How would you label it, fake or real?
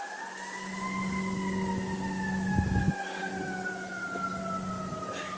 real